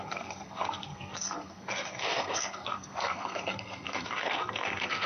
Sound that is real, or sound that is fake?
fake